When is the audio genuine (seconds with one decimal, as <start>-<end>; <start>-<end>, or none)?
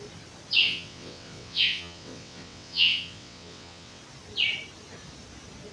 0.0-0.6; 4.0-5.7